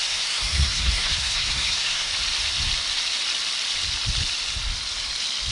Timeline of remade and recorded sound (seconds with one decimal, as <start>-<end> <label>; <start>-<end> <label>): 0.0-2.1 remade; 2.1-5.5 recorded